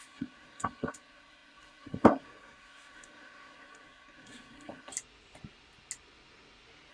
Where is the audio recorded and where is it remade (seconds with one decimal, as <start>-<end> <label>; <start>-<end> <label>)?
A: 0.0-4.9 remade; 4.9-6.9 recorded